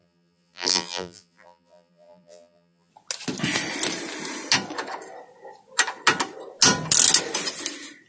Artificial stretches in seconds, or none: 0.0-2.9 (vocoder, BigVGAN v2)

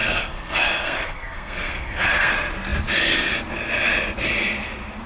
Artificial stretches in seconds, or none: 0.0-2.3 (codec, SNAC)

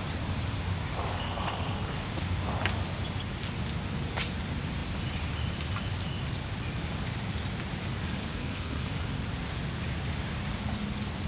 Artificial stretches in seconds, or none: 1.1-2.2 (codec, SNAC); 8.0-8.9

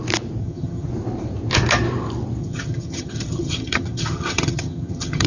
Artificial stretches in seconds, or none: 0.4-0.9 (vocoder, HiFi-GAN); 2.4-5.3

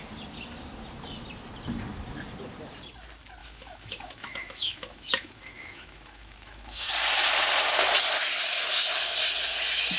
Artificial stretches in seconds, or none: 3.4-6.9 (autoencoder, DAC-VAE)

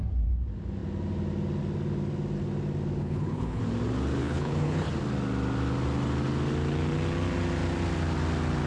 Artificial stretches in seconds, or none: 3.0-3.6 (codec, HILCodec); 4.2-4.9

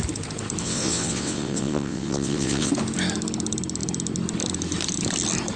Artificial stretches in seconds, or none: 0.6-2.7 (vocoder, WaveNeXt)